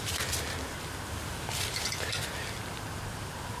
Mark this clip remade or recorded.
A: recorded